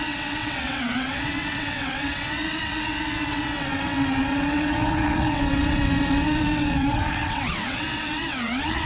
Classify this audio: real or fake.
fake